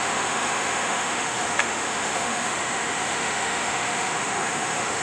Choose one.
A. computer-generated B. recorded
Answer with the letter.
A